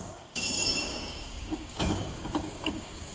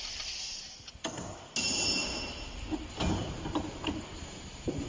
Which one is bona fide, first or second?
second